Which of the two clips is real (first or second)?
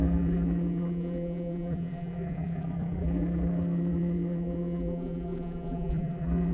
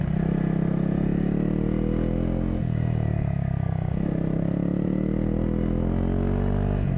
second